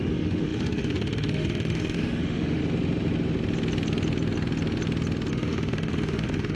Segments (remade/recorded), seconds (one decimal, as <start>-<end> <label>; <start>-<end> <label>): 0.0-2.6 remade; 2.6-5.3 recorded; 5.3-6.6 remade